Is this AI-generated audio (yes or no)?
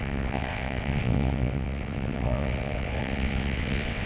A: yes